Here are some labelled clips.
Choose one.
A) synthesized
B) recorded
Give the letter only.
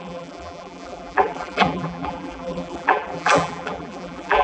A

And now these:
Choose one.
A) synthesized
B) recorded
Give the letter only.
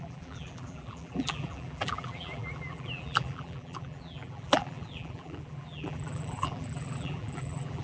A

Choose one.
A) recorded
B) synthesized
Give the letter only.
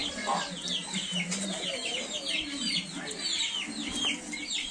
A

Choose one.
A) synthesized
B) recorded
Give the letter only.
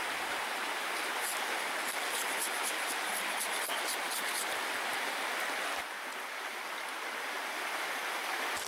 B